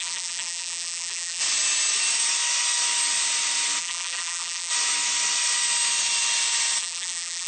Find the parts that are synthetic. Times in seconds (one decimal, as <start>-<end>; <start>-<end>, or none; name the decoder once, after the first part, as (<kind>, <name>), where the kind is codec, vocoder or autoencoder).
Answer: 0.0-1.4 (vocoder, BigVGAN v2); 3.8-4.7; 6.8-7.5